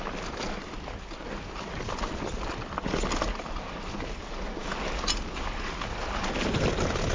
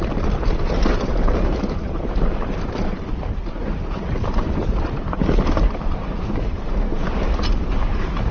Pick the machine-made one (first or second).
second